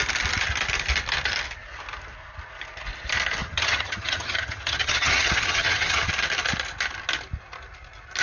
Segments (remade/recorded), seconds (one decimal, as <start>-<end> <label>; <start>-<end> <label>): 0.0-3.4 recorded; 3.4-6.1 remade; 6.1-8.2 recorded